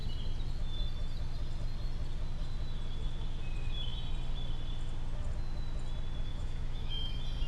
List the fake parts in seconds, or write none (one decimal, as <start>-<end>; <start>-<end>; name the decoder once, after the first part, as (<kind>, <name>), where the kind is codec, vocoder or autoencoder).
6.3-7.1 (autoencoder, DAC-VAE)